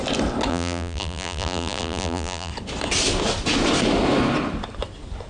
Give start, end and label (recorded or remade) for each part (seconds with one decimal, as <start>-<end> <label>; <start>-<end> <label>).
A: 0.0-0.5 recorded; 0.5-2.5 remade; 2.5-5.3 recorded